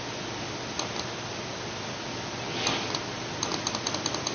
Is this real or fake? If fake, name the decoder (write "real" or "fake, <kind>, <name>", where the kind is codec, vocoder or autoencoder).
real